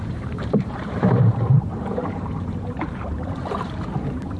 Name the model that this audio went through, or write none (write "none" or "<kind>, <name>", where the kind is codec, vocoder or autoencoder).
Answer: vocoder, BigVGAN v2